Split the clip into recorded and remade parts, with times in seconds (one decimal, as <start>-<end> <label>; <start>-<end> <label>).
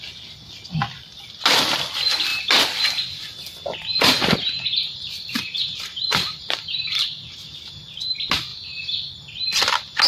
0.0-3.9 recorded; 3.9-8.0 remade; 8.0-8.5 recorded; 8.5-9.1 remade; 9.1-10.1 recorded